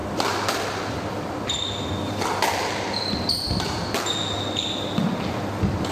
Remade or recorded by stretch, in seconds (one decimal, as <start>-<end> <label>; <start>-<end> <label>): 0.0-5.9 recorded